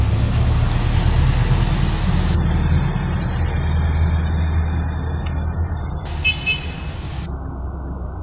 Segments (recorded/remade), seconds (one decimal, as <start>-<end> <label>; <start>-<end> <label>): 0.0-8.2 recorded